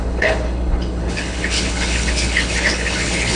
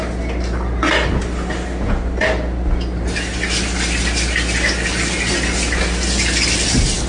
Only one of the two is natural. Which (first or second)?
second